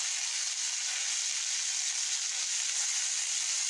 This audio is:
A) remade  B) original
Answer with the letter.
B